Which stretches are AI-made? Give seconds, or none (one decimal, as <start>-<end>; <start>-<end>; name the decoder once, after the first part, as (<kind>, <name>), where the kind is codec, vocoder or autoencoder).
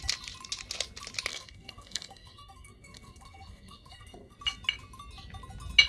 1.3-4.4 (codec, SNAC)